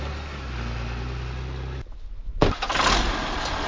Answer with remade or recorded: recorded